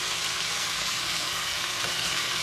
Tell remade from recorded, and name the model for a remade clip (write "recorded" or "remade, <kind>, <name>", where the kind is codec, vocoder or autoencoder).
remade, codec, SNAC